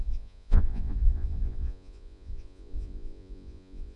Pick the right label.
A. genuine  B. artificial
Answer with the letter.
B